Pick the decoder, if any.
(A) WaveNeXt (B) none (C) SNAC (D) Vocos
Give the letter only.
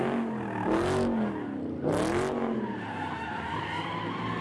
B